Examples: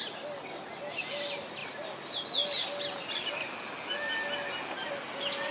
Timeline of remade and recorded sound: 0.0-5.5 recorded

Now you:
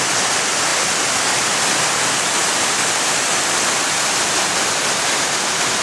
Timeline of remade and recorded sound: 0.0-5.8 recorded

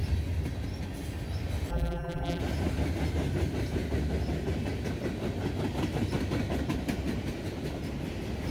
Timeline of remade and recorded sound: 0.0-1.7 recorded; 1.7-2.4 remade; 2.4-8.5 recorded